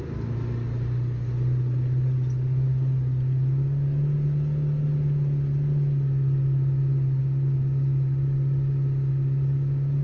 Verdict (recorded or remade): recorded